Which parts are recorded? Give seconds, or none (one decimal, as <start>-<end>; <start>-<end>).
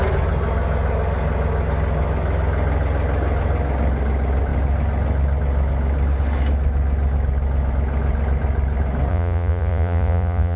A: 0.0-9.1